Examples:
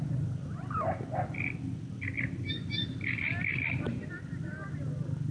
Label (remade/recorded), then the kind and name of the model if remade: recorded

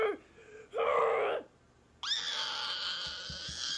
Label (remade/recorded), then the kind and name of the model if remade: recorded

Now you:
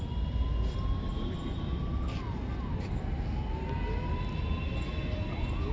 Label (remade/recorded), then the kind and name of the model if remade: recorded